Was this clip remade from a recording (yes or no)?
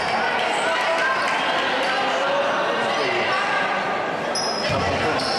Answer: no